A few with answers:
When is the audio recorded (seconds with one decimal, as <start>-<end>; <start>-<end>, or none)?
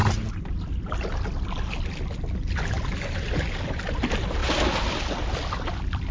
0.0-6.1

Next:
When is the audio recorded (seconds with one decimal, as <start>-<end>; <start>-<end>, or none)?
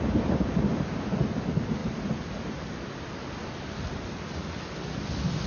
0.0-5.5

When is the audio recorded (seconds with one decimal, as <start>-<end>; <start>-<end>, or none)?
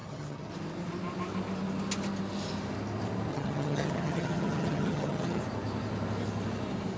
0.5-3.3; 5.4-7.0